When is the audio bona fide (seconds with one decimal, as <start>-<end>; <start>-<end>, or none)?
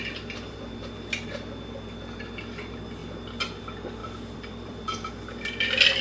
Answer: 0.0-4.0; 5.1-6.0